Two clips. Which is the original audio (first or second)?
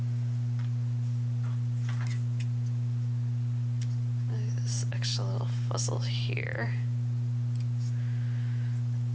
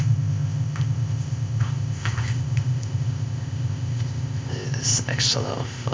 first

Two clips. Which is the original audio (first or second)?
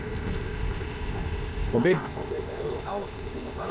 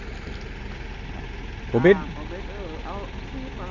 second